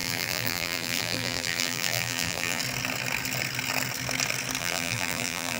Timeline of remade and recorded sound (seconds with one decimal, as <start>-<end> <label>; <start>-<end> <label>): 0.0-2.6 remade; 2.6-4.6 recorded; 4.6-5.6 remade